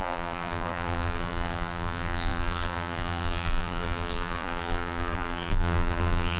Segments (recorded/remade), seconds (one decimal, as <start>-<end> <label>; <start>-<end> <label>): 0.0-6.4 remade